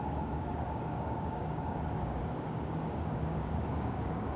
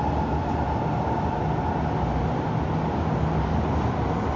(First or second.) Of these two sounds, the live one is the second